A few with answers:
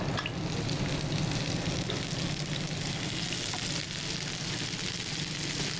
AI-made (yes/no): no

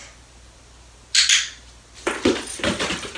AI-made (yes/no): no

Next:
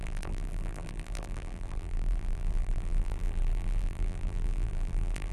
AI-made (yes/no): yes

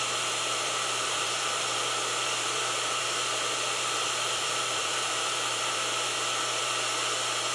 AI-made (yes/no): yes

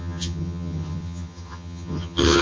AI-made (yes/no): yes